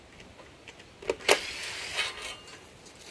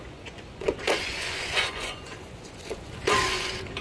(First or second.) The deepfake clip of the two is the second